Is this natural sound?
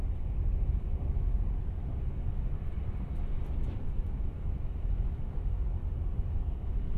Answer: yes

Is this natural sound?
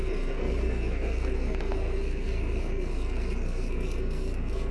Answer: no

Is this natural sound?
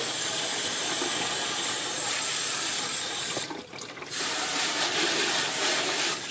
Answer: yes